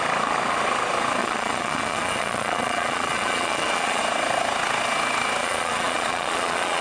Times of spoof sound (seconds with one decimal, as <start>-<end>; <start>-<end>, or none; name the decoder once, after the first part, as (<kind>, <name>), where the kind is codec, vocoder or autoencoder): 1.2-4.0 (vocoder, Vocos); 5.4-6.8